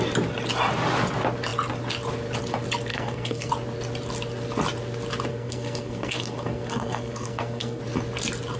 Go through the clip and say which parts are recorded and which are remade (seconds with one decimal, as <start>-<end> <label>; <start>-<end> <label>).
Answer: 0.0-2.9 recorded; 2.9-3.5 remade; 3.5-5.3 recorded; 5.3-7.8 remade; 7.8-8.6 recorded